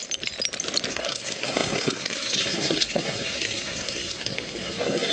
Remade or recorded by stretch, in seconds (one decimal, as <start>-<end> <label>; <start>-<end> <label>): 0.0-0.9 recorded; 0.9-5.1 remade